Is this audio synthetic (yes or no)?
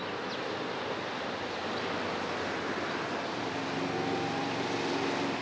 no